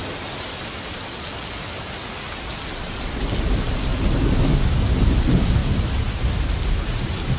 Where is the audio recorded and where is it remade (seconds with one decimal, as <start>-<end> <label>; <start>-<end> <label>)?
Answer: 0.0-7.4 recorded